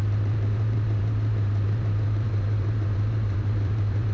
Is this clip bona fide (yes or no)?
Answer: no